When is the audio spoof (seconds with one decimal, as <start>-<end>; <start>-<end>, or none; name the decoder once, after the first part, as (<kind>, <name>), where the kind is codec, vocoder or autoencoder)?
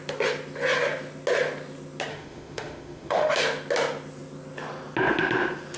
2.1-3.3 (autoencoder, DAC-VAE)